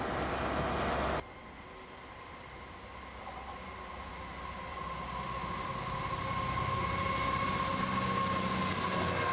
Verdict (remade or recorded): recorded